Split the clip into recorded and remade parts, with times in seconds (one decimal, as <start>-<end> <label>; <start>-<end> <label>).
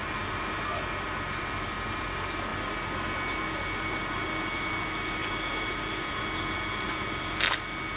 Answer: 0.0-8.0 recorded